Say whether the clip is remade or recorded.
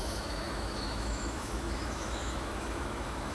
remade